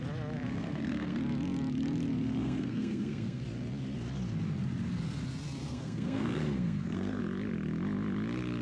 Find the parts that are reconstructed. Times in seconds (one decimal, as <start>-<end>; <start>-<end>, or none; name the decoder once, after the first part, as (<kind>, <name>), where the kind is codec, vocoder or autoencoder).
0.5-1.2 (codec, SNAC); 2.4-3.4; 5.6-7.2